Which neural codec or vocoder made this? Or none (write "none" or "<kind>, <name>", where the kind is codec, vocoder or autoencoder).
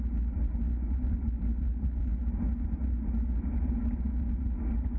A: none